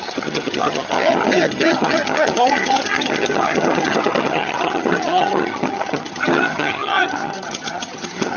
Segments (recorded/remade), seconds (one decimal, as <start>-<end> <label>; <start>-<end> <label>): 0.0-8.4 remade